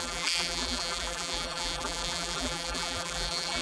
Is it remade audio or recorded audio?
remade